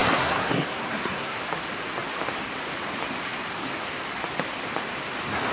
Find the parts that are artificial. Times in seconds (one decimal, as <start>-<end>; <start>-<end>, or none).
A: 0.0-1.4